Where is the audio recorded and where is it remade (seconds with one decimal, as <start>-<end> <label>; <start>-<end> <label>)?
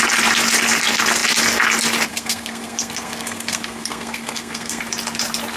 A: 0.0-2.1 recorded; 2.1-4.8 remade; 4.8-5.6 recorded